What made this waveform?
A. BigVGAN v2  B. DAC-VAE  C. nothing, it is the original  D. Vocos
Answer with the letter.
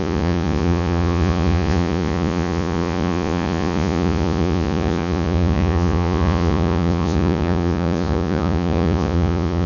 D